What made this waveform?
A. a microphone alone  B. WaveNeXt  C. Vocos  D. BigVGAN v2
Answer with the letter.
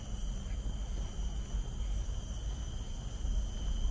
A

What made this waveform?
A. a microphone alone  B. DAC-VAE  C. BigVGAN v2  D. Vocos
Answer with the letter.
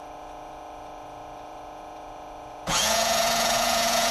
D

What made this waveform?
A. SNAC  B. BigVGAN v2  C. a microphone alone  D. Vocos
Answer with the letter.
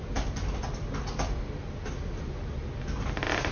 C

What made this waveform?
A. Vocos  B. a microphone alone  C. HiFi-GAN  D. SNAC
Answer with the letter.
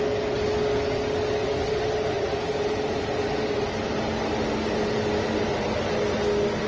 B